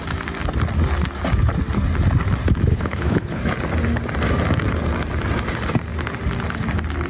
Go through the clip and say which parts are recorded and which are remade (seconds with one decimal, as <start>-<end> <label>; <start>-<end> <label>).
0.0-2.7 recorded; 2.7-3.4 remade; 3.4-7.1 recorded